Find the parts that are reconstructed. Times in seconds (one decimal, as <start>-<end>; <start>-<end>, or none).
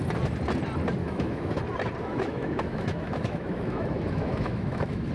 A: 1.0-1.6; 2.0-5.1